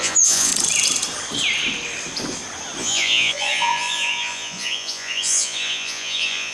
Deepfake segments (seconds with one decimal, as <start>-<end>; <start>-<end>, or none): 0.0-0.5; 2.8-6.5